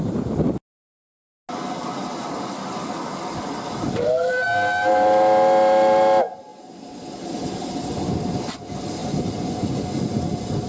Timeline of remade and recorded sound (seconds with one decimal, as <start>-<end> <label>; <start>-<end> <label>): 0.0-9.0 recorded; 9.0-10.0 remade; 10.0-10.7 recorded